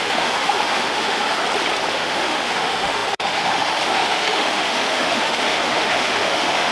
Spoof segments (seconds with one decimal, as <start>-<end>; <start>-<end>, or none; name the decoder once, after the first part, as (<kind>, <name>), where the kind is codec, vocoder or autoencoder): 0.0-1.4 (autoencoder, DAC-VAE); 1.9-6.7

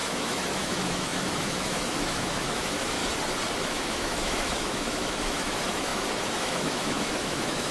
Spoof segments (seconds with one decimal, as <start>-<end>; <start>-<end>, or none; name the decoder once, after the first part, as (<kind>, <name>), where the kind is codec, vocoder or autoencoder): 0.0-3.0 (autoencoder, DAC-VAE); 3.6-7.7